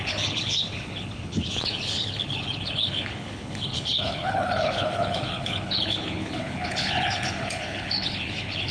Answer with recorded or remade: remade